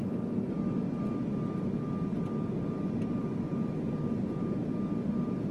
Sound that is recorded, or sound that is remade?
recorded